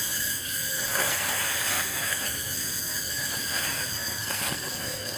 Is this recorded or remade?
remade